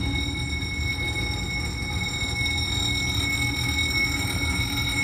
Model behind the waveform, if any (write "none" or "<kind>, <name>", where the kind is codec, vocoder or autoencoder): none